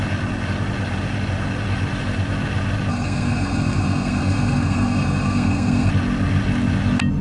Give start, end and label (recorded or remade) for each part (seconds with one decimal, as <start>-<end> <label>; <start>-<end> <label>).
0.0-2.9 recorded; 2.9-5.9 remade; 5.9-7.2 recorded